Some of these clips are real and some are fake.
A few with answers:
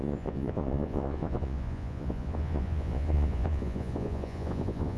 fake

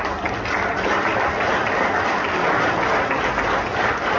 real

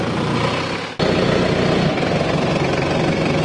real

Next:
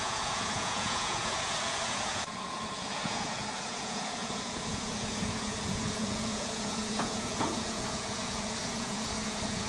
fake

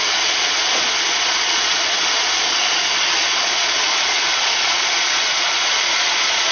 fake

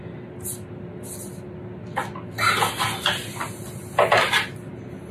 real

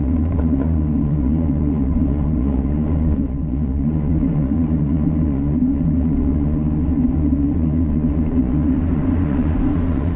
fake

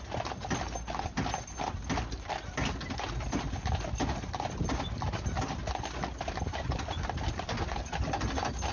real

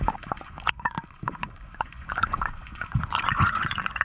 fake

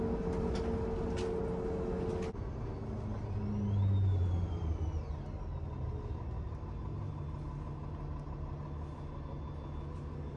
real